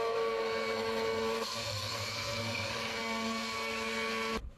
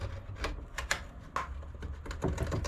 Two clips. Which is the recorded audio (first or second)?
second